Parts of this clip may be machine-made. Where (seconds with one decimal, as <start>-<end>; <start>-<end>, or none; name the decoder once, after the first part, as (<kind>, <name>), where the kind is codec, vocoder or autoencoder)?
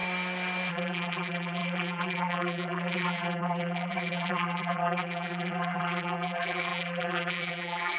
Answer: 0.7-8.0 (vocoder, BigVGAN v2)